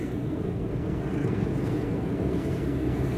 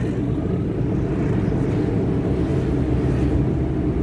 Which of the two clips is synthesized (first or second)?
first